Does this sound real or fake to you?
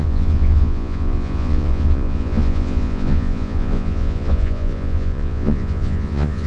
fake